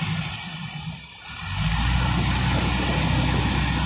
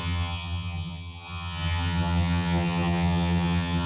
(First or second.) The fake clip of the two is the second